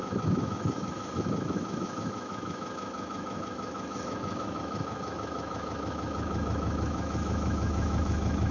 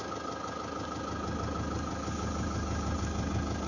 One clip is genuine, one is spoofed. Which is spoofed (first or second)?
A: first